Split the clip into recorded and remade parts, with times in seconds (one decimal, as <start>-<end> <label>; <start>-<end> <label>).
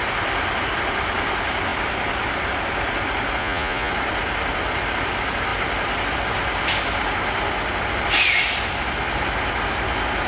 0.0-3.4 recorded; 3.4-3.9 remade; 3.9-10.3 recorded